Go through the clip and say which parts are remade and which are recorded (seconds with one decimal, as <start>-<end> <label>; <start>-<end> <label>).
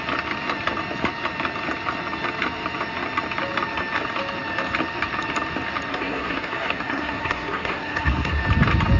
0.0-5.9 recorded; 5.9-8.4 remade; 8.4-9.0 recorded